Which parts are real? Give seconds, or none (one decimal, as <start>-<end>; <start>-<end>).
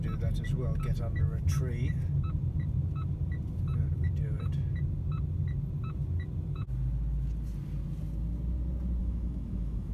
0.0-9.0